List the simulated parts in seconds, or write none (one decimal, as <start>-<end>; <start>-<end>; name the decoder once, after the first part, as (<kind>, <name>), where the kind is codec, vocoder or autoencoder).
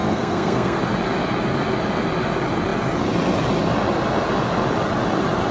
0.0-0.8 (codec, SNAC)